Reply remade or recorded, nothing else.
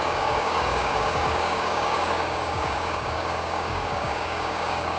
remade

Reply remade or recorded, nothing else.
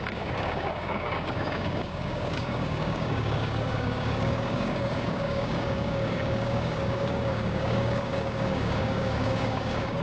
remade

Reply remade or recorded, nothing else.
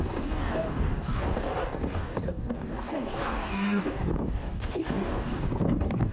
remade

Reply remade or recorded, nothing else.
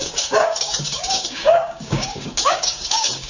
remade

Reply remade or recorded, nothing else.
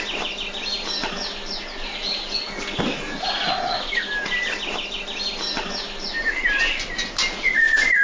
recorded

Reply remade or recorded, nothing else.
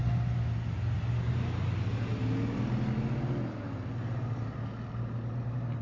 recorded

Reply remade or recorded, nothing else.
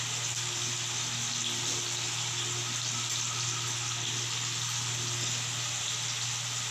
recorded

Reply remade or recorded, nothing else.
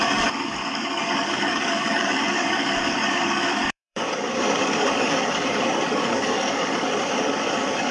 remade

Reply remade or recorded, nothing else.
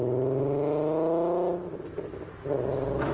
recorded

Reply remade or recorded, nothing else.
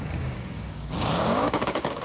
remade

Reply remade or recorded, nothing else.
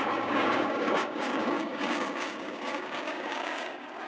remade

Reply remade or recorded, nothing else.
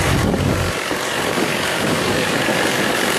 remade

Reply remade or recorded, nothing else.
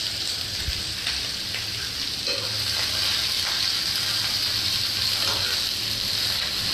recorded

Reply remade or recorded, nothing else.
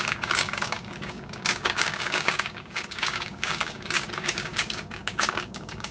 remade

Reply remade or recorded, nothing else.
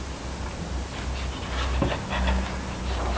recorded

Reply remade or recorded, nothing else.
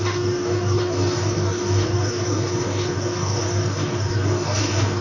remade